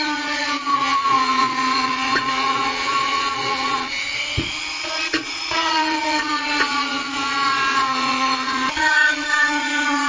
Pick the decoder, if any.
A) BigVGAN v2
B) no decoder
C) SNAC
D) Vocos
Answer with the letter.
D